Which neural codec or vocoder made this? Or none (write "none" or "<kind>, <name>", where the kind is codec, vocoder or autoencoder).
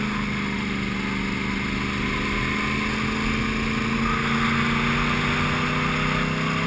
none